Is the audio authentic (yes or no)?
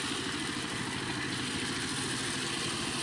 yes